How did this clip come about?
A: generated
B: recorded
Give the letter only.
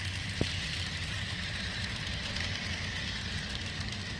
A